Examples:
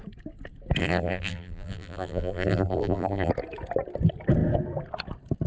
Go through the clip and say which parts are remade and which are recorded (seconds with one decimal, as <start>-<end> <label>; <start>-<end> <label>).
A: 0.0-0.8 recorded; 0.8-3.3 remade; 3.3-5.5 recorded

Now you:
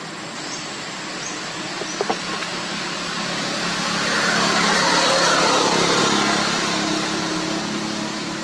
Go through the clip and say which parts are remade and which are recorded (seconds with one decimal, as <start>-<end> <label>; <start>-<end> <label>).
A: 0.0-8.4 recorded

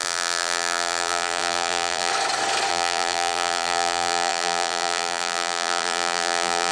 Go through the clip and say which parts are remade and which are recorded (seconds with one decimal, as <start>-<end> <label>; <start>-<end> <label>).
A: 0.0-2.1 remade; 2.1-2.7 recorded; 2.7-6.7 remade